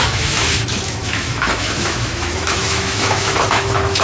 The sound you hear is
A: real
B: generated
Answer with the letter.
B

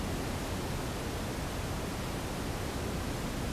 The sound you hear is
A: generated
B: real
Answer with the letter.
B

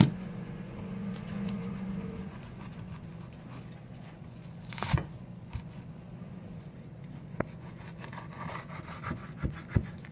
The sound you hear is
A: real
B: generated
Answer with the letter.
B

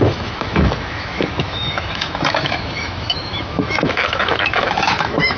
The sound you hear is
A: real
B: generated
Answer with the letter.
B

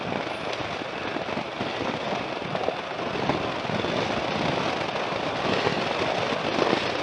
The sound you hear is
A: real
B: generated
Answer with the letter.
A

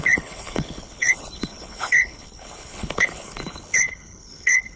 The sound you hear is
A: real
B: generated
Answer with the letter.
B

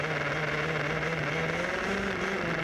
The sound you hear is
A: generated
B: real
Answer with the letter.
B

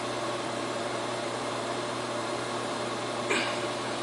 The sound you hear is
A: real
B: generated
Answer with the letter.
B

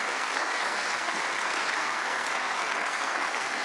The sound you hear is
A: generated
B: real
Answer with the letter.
A